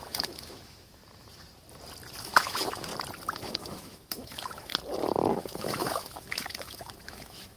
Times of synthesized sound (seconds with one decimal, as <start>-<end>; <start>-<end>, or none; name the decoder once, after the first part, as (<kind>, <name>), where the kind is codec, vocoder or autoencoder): 0.0-1.0 (autoencoder, DAC-VAE); 2.2-2.9; 3.4-4.7; 5.3-7.6